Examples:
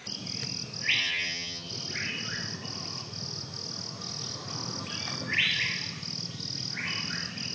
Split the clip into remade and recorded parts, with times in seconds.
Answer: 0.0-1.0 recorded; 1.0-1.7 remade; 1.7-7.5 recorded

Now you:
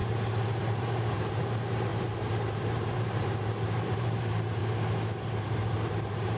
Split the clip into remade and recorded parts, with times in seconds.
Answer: 0.0-0.6 recorded; 0.6-4.6 remade; 4.6-5.4 recorded; 5.4-6.4 remade

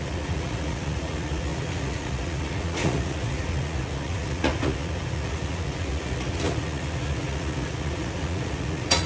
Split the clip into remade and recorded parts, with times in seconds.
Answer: 0.0-9.1 remade

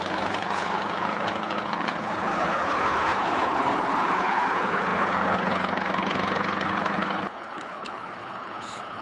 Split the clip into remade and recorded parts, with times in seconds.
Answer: 0.0-9.0 remade

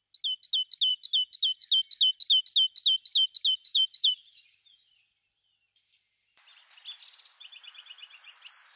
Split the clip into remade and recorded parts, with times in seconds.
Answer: 0.0-3.6 recorded; 3.6-6.1 remade; 6.1-8.8 recorded

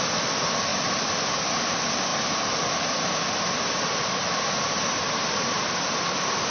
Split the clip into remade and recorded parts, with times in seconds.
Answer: 0.0-0.7 recorded; 0.7-1.4 remade; 1.4-6.5 recorded

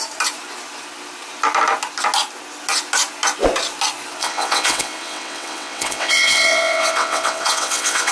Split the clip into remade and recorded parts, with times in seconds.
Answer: 0.0-4.2 recorded; 4.2-8.1 remade